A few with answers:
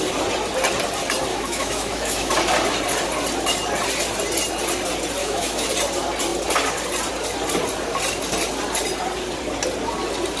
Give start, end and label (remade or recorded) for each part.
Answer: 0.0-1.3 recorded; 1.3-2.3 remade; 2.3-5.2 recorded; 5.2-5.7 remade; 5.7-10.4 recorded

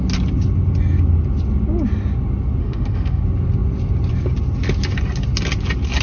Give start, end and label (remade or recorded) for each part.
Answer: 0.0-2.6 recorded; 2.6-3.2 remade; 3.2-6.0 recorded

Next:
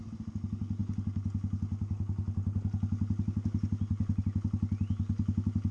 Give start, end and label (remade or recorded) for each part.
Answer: 0.0-5.7 recorded

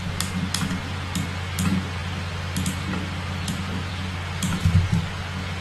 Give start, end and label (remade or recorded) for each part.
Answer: 0.0-5.6 recorded

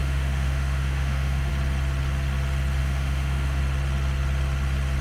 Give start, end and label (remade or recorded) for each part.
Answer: 0.0-1.5 remade; 1.5-2.8 recorded; 2.8-3.6 remade; 3.6-5.0 recorded

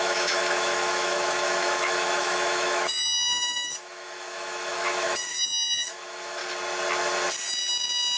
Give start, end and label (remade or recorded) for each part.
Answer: 0.0-6.4 remade; 6.4-8.2 recorded